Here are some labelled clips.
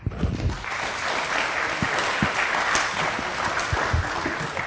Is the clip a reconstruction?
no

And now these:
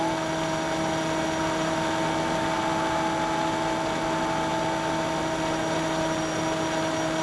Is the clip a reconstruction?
no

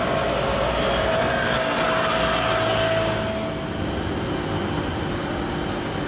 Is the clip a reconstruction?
no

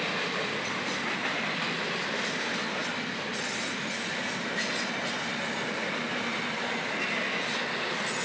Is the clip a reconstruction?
no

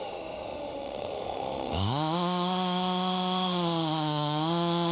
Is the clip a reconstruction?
yes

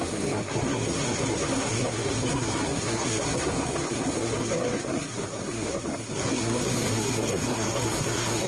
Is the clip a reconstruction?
yes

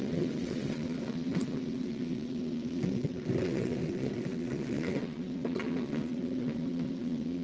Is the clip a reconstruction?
yes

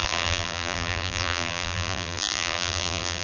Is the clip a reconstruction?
yes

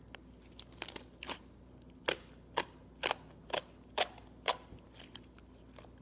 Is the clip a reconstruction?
no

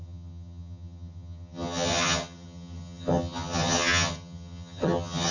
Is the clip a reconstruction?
yes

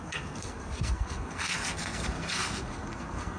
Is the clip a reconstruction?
yes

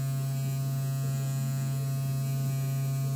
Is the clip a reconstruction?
no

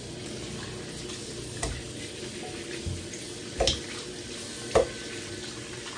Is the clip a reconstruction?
no